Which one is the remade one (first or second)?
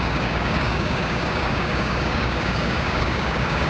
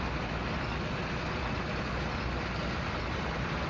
first